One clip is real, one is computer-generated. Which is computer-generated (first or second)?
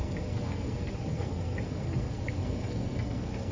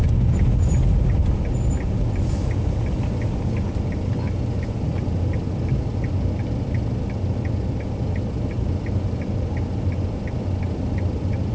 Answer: first